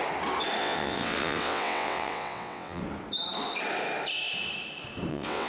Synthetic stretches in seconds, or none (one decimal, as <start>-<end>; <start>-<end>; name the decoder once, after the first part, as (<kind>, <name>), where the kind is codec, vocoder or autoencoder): 0.6-2.8 (vocoder, WaveNeXt); 5.1-5.5